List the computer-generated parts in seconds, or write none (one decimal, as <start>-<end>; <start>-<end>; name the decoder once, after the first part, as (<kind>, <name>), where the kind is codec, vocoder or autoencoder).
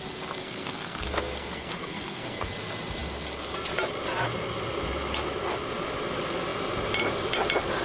0.4-2.5 (codec, SNAC)